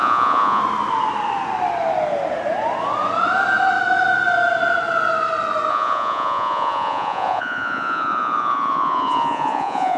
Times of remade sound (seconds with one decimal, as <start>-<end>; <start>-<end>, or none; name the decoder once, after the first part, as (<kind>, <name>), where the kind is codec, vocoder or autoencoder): 0.0-0.6 (vocoder, Vocos); 5.7-10.0